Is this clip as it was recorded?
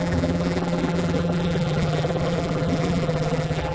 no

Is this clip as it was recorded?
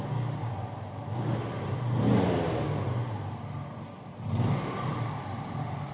yes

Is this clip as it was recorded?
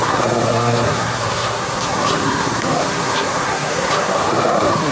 no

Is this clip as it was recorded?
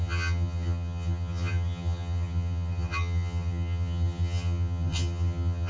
no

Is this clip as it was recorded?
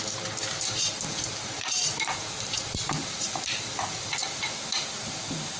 no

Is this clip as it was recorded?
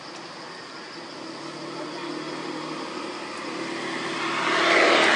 yes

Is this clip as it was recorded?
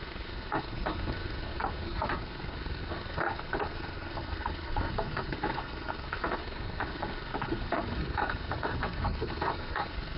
no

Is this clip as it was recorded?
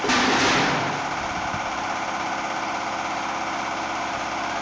yes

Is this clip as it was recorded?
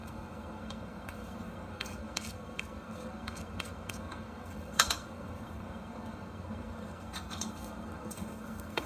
no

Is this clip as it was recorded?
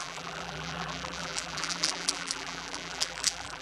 no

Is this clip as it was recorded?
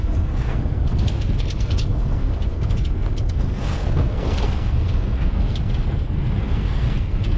no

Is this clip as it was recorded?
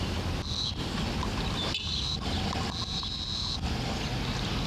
yes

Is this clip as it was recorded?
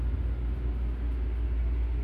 yes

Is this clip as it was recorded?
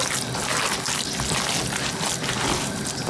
yes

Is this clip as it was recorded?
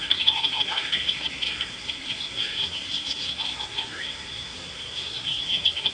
no